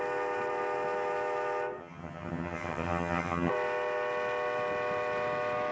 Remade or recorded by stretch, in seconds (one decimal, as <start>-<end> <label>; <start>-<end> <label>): 0.0-1.8 recorded; 1.8-3.5 remade; 3.5-5.7 recorded